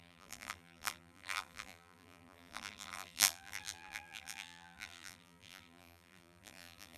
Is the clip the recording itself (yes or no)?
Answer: no